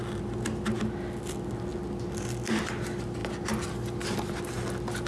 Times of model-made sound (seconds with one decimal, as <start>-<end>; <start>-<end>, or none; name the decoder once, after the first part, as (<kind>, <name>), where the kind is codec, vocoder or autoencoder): none